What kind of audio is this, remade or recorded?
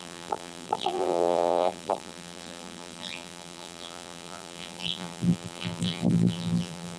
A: remade